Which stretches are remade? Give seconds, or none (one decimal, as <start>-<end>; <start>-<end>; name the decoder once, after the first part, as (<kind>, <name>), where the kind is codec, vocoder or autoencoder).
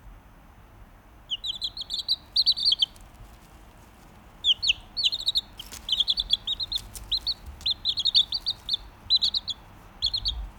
none